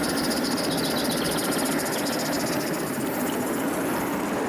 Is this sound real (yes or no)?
yes